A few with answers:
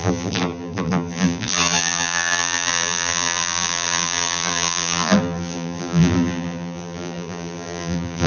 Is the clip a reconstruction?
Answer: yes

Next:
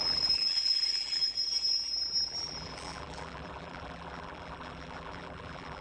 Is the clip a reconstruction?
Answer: yes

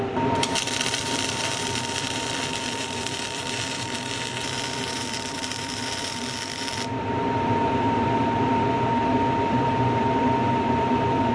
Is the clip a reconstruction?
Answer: yes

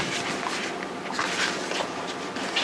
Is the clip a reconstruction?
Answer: no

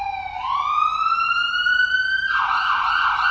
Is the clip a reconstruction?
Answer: no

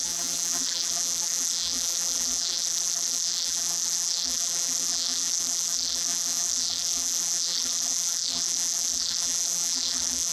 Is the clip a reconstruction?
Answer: yes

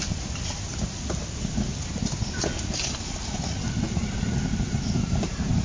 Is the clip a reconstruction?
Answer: yes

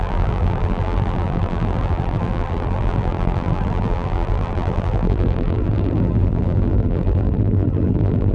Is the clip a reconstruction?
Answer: yes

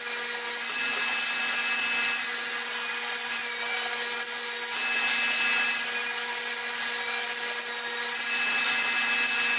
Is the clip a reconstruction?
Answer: no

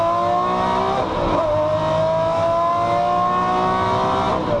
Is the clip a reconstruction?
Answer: no